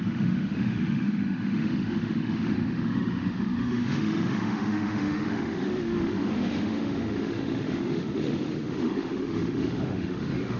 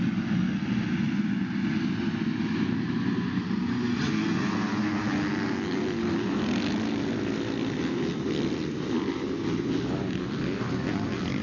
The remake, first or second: first